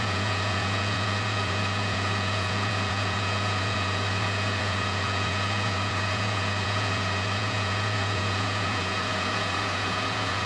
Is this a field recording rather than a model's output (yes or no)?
no